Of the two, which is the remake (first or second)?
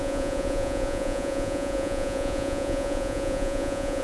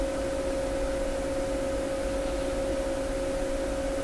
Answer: first